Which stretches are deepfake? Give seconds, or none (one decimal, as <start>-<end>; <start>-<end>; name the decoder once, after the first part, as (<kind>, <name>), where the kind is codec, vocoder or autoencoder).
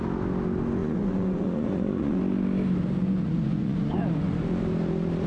0.8-2.2 (vocoder, Vocos); 3.0-4.3